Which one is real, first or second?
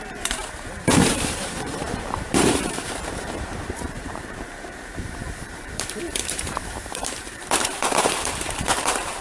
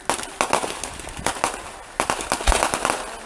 second